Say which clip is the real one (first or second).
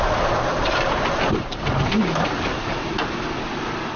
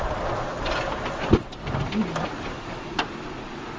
second